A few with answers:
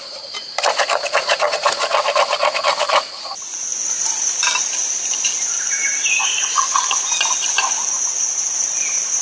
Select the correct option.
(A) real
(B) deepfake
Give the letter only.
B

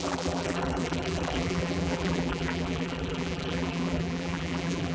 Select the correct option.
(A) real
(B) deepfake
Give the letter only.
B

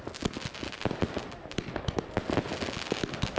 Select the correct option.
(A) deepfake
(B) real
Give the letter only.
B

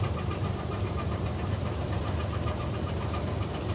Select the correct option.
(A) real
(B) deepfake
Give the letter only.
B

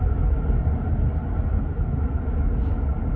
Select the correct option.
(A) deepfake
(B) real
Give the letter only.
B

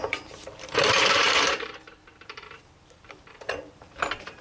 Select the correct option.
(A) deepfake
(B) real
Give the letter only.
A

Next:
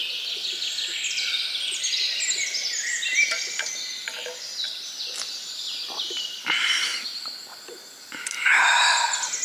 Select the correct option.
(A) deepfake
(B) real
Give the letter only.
B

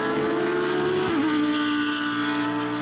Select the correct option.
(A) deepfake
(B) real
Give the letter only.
B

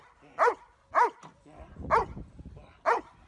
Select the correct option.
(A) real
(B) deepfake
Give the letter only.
A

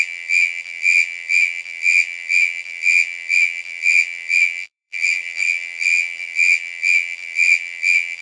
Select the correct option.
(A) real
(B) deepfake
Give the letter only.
B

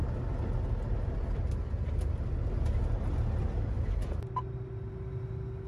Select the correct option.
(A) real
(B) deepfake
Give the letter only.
A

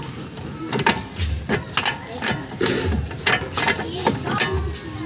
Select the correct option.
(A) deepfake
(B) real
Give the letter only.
B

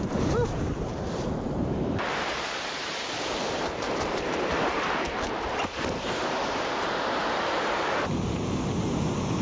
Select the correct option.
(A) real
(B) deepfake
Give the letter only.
B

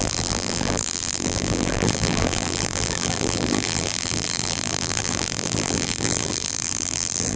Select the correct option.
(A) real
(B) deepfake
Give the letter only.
B